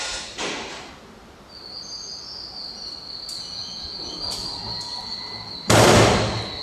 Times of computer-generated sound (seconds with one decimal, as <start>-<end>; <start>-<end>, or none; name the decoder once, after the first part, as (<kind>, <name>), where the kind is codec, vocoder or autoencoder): none